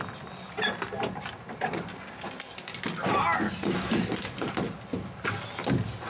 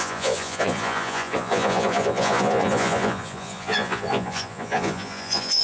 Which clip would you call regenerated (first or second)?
second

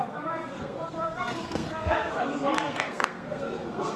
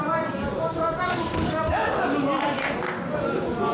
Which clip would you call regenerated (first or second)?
first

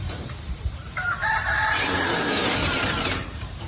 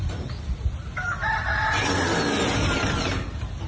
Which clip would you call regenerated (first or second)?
first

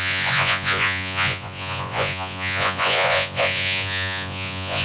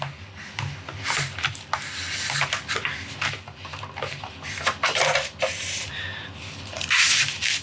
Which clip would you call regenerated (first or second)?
first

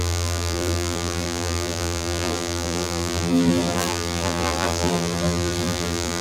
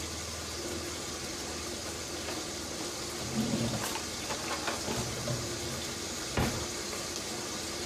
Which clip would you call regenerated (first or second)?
first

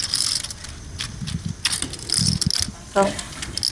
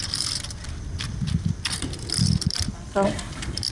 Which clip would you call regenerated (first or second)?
second